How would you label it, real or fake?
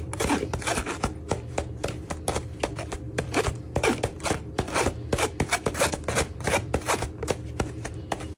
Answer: fake